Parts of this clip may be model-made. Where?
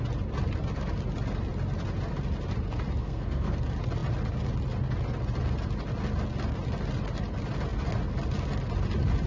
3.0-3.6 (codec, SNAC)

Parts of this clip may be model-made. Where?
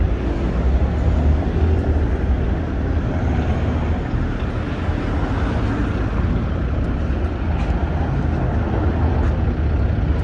none